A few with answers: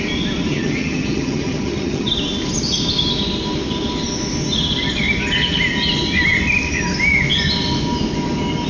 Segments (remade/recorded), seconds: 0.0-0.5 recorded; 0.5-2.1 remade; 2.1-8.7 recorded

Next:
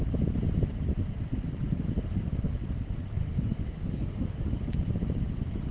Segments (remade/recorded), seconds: 0.0-3.2 recorded; 3.2-4.4 remade; 4.4-5.7 recorded

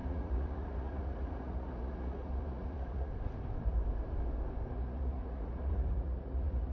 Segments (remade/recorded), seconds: 0.0-3.1 remade; 3.1-4.7 recorded; 4.7-6.7 remade